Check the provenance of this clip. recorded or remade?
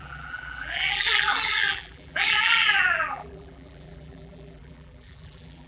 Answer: remade